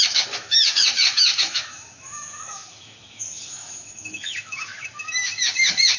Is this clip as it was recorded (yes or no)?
no